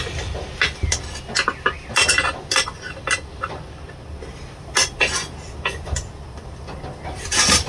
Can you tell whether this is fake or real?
real